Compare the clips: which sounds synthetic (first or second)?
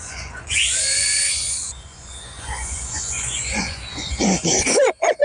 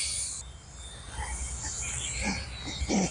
first